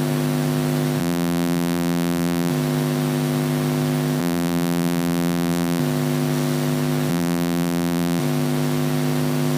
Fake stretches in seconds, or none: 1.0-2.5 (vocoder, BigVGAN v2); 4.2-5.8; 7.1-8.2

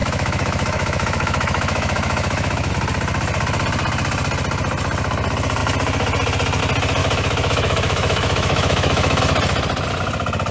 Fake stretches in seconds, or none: 0.0-2.7 (autoencoder, DAC-VAE); 7.0-9.2

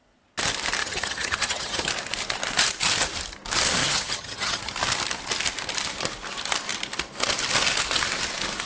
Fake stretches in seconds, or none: 0.8-1.9 (vocoder, HiFi-GAN); 3.8-4.6

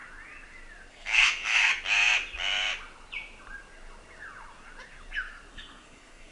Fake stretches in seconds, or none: 0.9-1.7 (codec, SNAC); 5.5-6.3

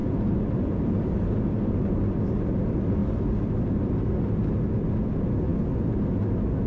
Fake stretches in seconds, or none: 0.0-1.4 (vocoder, BigVGAN v2)

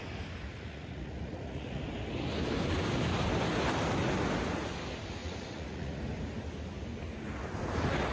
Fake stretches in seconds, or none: 0.5-1.8 (vocoder, Vocos); 5.2-6.0

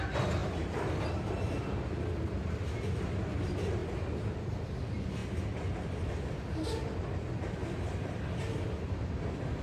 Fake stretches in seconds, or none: none